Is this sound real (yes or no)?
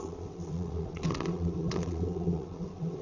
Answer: no